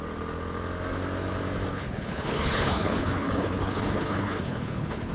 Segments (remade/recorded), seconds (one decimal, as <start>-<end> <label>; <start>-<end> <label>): 0.0-1.7 recorded; 1.7-5.1 remade